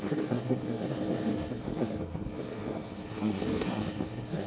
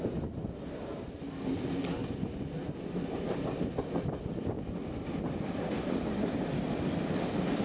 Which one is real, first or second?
second